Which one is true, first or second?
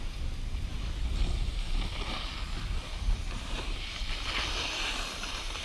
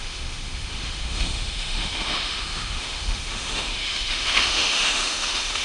first